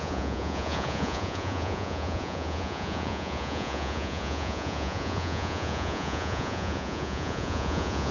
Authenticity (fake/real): fake